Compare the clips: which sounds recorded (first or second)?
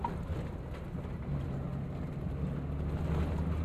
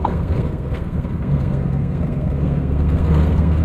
first